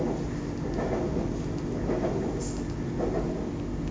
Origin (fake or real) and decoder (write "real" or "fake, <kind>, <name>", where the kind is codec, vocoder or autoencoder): real